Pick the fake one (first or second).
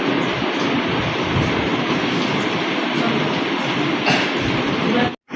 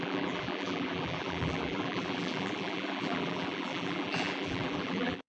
second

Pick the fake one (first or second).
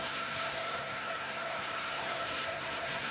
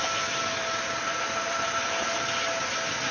first